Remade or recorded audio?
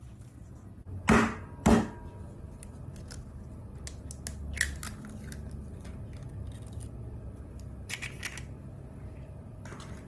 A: recorded